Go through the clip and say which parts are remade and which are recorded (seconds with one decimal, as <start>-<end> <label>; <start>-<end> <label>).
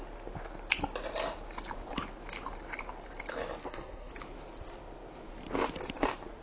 0.0-3.6 recorded; 3.6-4.1 remade; 4.1-6.4 recorded